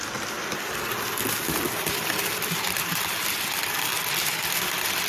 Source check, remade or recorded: recorded